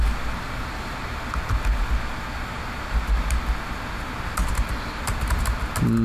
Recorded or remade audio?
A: recorded